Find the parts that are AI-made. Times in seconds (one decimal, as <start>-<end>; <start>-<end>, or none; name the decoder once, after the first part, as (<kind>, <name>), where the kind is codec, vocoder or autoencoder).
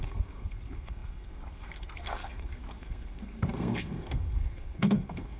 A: 0.0-5.4 (codec, SNAC)